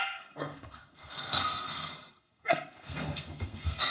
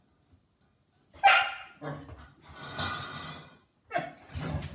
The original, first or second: second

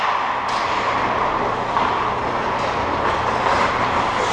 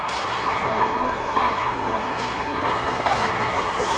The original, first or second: first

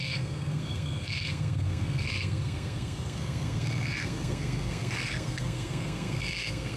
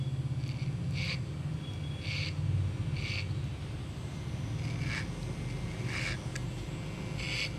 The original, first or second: second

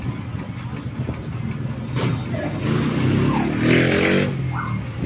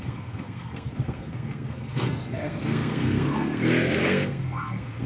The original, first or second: first